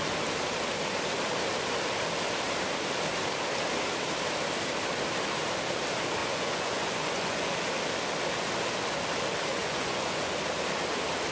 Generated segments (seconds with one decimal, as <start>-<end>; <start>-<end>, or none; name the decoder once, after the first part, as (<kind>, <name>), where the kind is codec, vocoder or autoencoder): 6.2-7.5 (vocoder, Vocos); 9.5-10.3